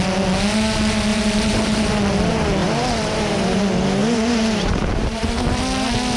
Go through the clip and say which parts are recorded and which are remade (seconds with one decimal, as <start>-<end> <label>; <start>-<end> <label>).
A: 0.0-1.1 recorded; 1.1-1.9 remade; 1.9-2.6 recorded; 2.6-3.6 remade; 3.6-4.0 recorded; 4.0-5.2 remade; 5.2-6.2 recorded